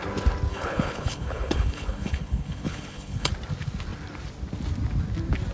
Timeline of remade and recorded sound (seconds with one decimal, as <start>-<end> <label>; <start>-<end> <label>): 0.0-0.5 recorded; 0.5-3.3 remade; 3.3-5.5 recorded